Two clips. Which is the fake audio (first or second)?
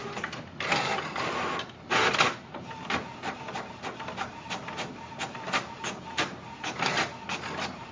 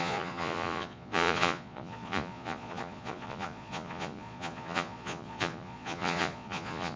second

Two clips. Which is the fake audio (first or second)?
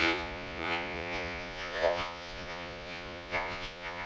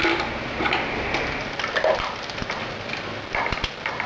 first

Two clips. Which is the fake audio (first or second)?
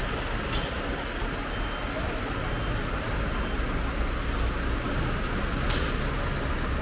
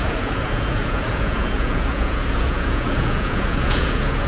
second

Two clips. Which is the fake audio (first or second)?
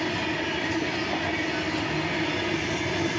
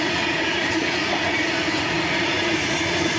second